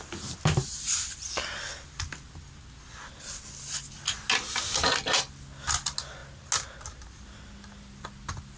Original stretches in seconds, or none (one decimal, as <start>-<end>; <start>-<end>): 0.0-8.6